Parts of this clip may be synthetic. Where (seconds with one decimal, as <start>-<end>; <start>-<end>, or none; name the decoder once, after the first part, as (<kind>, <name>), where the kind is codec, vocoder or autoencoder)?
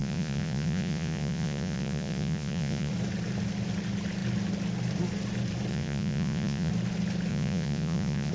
0.0-2.9 (vocoder, Vocos); 5.7-6.7; 7.3-8.3